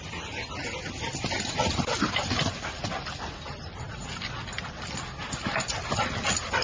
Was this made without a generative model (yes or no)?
yes